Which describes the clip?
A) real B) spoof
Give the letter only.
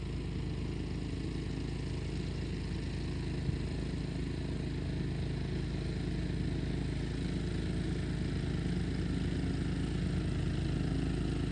A